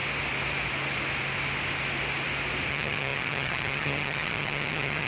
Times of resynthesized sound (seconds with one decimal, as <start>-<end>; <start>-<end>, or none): 2.7-5.1